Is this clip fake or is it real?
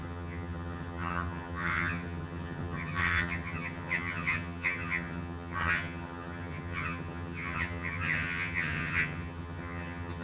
fake